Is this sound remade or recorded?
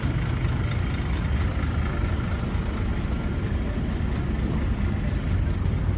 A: recorded